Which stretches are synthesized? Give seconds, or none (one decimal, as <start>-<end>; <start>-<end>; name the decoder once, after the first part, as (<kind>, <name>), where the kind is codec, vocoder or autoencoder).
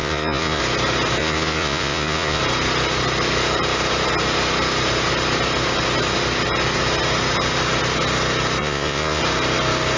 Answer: 0.0-0.6 (vocoder, Vocos); 1.2-2.4; 8.6-9.2